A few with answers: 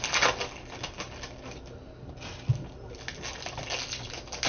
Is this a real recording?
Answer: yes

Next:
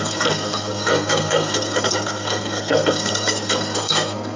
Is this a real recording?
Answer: no